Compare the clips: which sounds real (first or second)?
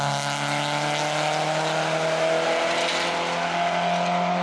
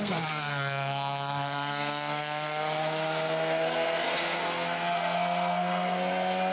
first